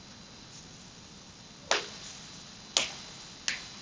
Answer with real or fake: real